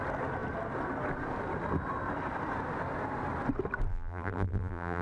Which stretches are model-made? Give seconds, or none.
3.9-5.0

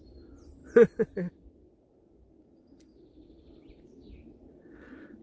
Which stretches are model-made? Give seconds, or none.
none

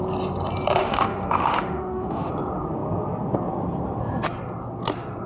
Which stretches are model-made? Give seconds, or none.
0.8-2.3

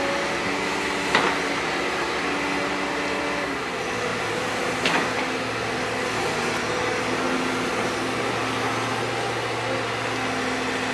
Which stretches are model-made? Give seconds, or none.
4.1-4.7

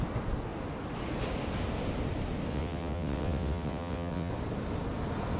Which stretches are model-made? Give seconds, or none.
2.5-4.3

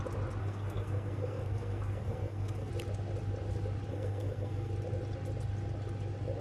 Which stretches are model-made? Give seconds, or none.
0.4-2.7; 3.9-4.7